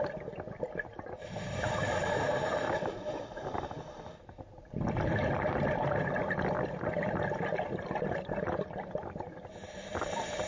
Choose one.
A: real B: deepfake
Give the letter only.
A